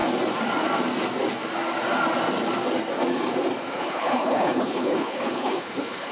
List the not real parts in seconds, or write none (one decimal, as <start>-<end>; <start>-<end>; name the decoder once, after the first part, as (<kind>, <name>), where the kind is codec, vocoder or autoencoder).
3.7-6.1 (codec, HILCodec)